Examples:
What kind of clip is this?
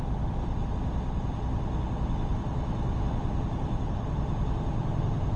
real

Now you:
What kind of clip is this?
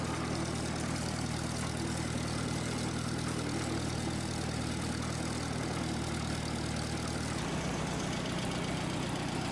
real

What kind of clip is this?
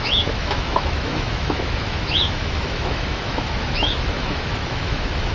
fake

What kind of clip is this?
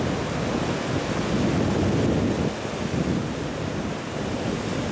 real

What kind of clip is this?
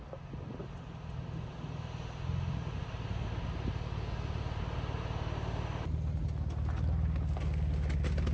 real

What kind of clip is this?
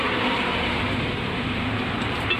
fake